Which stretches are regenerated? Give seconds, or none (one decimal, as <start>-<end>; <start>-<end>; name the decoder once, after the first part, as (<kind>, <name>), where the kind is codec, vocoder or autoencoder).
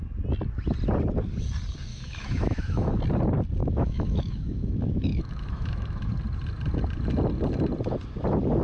1.9-2.9 (autoencoder, DAC-VAE); 3.6-6.1